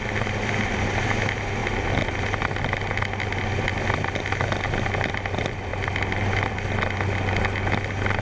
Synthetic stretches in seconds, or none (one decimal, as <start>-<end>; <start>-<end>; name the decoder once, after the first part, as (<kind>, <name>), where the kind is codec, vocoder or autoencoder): none